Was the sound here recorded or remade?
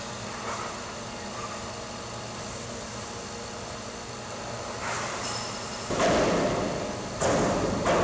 recorded